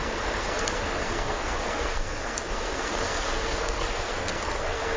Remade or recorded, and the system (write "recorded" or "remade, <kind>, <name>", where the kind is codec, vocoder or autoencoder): remade, codec, SNAC